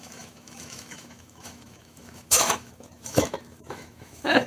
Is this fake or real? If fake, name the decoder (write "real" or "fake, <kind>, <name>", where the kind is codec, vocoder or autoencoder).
fake, autoencoder, DAC-VAE